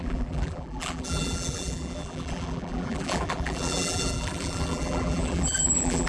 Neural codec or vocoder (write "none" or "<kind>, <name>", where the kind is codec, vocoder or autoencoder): vocoder, BigVGAN v2